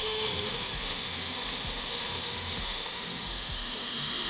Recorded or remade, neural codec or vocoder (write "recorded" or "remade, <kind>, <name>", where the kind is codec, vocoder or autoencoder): remade, autoencoder, DAC-VAE